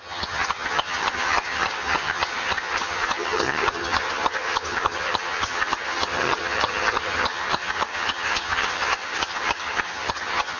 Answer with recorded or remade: remade